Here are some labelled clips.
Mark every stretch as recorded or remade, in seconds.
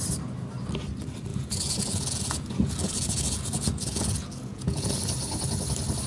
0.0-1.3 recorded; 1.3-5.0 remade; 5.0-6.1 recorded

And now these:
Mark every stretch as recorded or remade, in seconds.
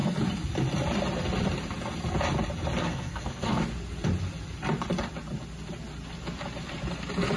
0.0-2.8 recorded; 2.8-3.6 remade; 3.6-7.4 recorded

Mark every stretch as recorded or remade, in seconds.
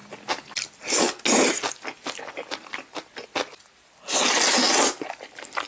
0.0-5.7 recorded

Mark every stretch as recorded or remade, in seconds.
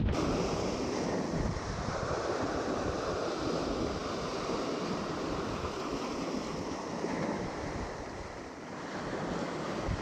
0.0-10.0 remade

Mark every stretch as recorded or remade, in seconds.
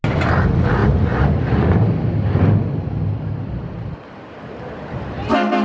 0.0-5.6 recorded